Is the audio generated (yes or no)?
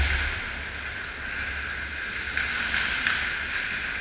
no